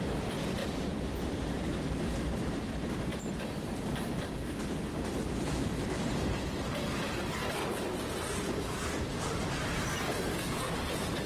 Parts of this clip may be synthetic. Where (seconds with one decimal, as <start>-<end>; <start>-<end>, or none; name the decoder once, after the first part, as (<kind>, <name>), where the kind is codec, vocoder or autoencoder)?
0.6-2.0 (vocoder, BigVGAN v2); 3.1-4.2; 4.9-6.5